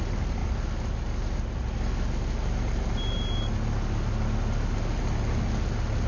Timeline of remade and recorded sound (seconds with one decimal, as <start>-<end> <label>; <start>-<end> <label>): 0.0-6.1 recorded